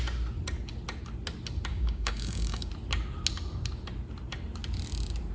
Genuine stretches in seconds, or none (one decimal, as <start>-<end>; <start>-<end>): 0.0-1.7; 2.7-5.3